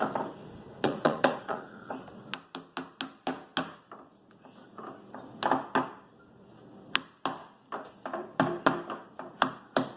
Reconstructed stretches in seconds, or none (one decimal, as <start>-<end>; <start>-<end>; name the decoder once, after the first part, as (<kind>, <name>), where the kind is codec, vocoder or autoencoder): 0.4-1.9 (vocoder, Vocos)